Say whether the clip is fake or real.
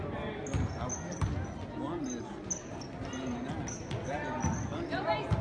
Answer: real